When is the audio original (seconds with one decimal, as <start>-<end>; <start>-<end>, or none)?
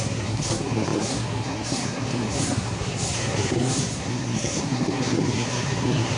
none